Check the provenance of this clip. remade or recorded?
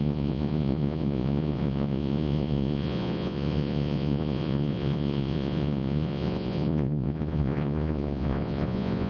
remade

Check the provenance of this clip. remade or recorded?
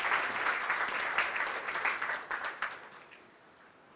recorded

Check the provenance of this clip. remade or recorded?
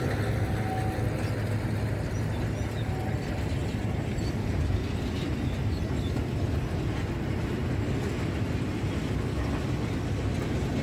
recorded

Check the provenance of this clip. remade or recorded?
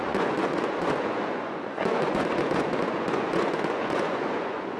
remade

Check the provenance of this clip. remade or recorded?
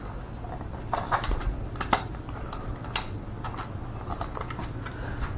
recorded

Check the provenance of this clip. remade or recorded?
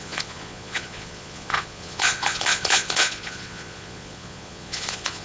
remade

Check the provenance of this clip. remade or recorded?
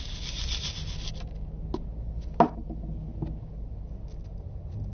recorded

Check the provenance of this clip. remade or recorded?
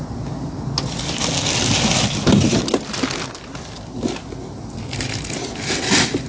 recorded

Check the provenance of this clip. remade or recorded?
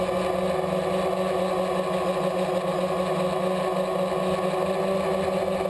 recorded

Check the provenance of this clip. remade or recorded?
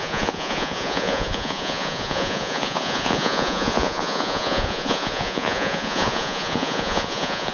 remade